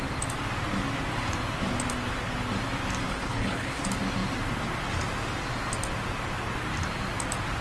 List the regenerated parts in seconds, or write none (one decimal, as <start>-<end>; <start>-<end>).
3.1-3.8